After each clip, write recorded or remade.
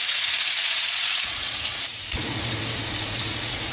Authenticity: remade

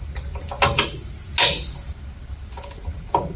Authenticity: recorded